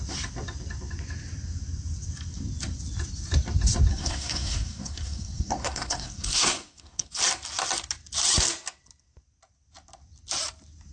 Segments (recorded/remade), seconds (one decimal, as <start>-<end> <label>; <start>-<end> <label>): 0.0-3.9 recorded; 3.9-7.2 remade; 7.2-10.9 recorded